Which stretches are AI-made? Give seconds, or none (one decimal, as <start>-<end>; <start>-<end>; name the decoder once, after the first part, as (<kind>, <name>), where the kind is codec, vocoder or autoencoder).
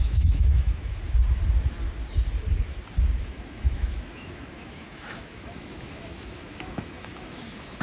0.0-0.9 (autoencoder, DAC-VAE); 3.2-7.8